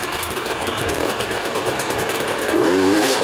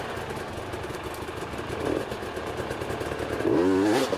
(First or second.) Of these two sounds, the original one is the second